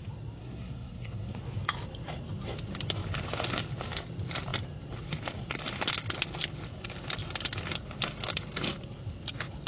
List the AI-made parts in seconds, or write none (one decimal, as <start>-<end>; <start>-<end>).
0.4-1.4

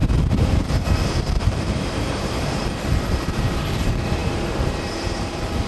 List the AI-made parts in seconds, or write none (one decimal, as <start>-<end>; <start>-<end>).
0.0-5.7

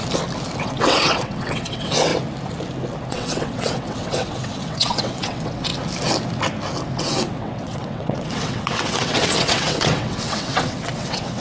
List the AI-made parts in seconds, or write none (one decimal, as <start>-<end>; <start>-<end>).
0.6-2.1; 3.1-5.7; 7.0-11.4